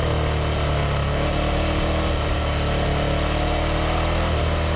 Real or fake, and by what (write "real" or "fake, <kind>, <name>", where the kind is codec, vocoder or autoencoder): real